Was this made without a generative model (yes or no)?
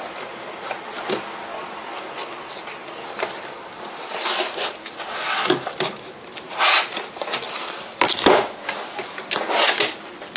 yes